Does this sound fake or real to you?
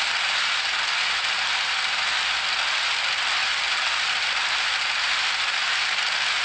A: real